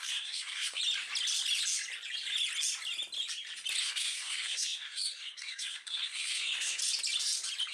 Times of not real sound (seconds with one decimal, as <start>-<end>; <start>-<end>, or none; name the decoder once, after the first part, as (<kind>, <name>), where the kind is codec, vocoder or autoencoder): 0.0-0.8 (codec, SNAC); 3.8-6.8